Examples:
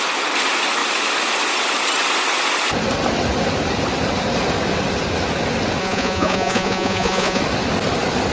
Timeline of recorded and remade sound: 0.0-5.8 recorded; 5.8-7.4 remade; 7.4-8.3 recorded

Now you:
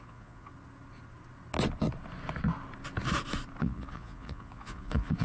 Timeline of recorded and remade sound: 0.0-0.5 remade; 0.5-3.6 recorded; 3.6-5.2 remade

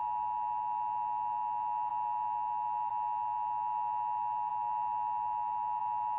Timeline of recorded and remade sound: 0.0-6.2 recorded

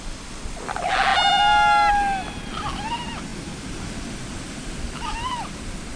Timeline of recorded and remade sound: 0.0-6.0 recorded

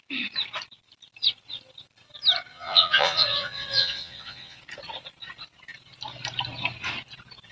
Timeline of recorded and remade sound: 0.0-2.5 recorded; 2.5-4.6 remade; 4.6-7.5 recorded

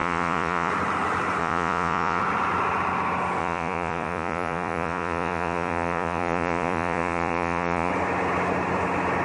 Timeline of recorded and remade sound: 0.0-0.7 remade; 0.7-1.4 recorded; 1.4-2.2 remade; 2.2-3.4 recorded; 3.4-7.9 remade; 7.9-9.2 recorded

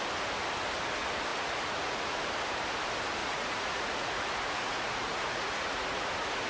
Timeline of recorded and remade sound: 0.0-1.3 recorded; 1.3-2.2 remade; 2.2-3.2 recorded; 3.2-6.1 remade; 6.1-6.5 recorded

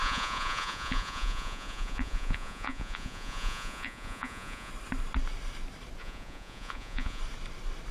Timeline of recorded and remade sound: 0.0-4.7 remade; 4.7-6.0 recorded; 6.0-7.2 remade; 7.2-7.9 recorded